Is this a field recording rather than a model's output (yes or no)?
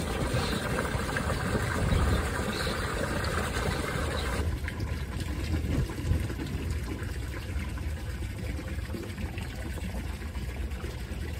no